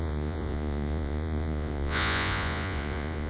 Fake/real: fake